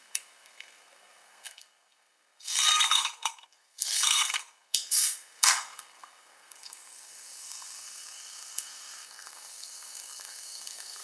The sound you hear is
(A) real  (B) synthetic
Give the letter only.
B